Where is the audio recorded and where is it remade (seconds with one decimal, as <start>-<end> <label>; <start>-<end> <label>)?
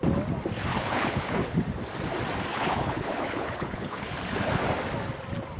0.0-0.7 recorded; 0.7-1.6 remade; 1.6-2.5 recorded; 2.5-4.2 remade; 4.2-5.6 recorded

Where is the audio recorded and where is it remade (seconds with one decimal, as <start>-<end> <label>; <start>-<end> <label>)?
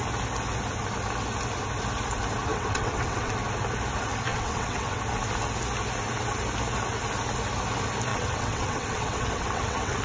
0.0-2.5 recorded; 2.5-3.3 remade; 3.3-4.3 recorded; 4.3-5.0 remade; 5.0-8.1 recorded; 8.1-10.0 remade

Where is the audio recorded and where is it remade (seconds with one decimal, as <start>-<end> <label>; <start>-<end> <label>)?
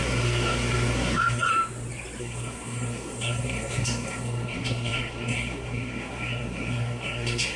0.0-1.5 remade; 1.5-2.2 recorded; 2.2-7.6 remade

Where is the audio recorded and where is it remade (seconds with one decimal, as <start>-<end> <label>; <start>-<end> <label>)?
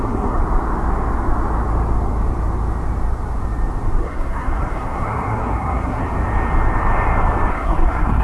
0.0-0.4 remade; 0.4-4.0 recorded; 4.0-6.0 remade; 6.0-7.5 recorded; 7.5-8.2 remade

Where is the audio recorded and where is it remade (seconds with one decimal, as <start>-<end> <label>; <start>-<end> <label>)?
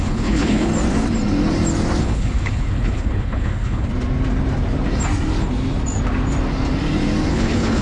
0.0-0.7 remade; 0.7-2.0 recorded; 2.0-3.9 remade; 3.9-7.3 recorded; 7.3-7.8 remade